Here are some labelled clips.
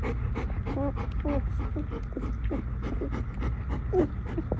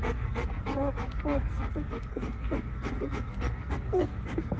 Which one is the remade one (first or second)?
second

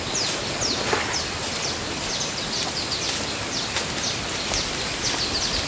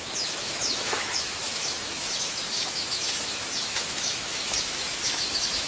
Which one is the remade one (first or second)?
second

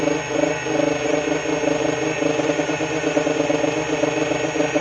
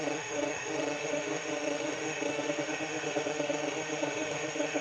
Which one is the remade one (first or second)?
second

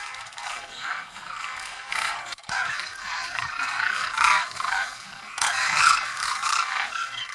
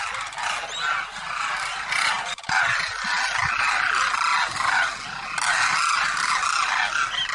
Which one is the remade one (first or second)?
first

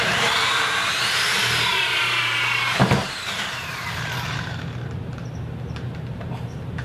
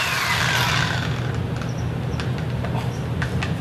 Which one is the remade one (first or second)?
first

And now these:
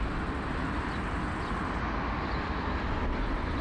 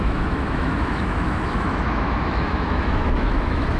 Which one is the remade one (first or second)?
second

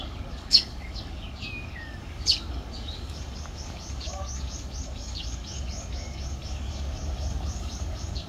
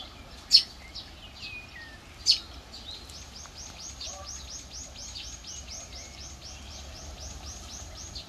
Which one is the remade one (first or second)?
first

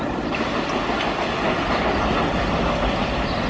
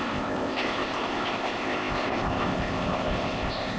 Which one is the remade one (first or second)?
second